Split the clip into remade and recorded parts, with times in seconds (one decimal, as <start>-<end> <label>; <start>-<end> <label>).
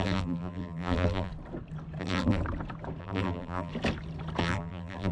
0.0-1.3 remade; 1.3-2.0 recorded; 2.0-2.4 remade; 2.4-3.0 recorded; 3.0-3.7 remade; 3.7-4.4 recorded; 4.4-5.1 remade